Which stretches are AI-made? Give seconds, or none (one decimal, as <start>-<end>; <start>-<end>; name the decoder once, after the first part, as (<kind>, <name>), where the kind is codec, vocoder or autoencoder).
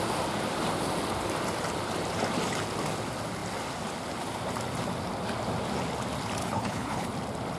6.4-7.1 (codec, HILCodec)